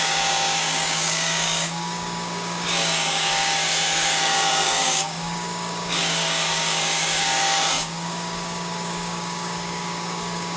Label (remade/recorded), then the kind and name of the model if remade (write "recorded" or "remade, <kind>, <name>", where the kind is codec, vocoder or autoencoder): remade, codec, DAC